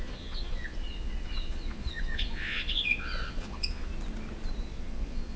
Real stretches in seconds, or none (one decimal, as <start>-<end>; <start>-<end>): 3.9-4.6

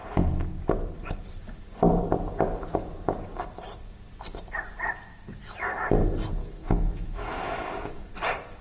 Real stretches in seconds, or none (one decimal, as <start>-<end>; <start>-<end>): 0.0-6.4; 8.1-8.6

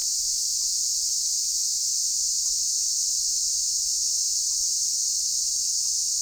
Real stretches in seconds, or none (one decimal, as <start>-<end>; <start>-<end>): 0.0-6.2

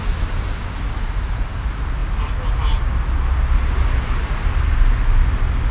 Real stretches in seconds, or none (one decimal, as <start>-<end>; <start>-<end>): 0.0-5.7

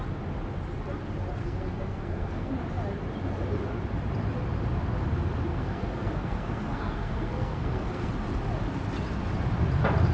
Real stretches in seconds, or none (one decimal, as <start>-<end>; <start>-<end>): 0.0-1.4; 2.5-5.5; 8.1-10.1